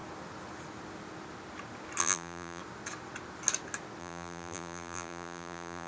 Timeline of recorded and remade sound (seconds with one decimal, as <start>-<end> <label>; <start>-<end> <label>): 0.0-2.0 recorded; 2.0-2.6 remade; 2.6-4.0 recorded; 4.0-5.9 remade